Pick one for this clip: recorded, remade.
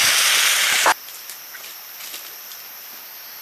recorded